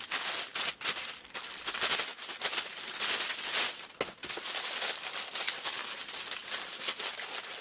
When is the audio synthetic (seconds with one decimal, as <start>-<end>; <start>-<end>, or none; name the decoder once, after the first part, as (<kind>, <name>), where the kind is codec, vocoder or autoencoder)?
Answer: none